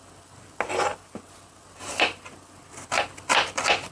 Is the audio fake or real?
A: real